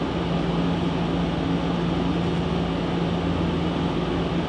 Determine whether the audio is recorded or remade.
recorded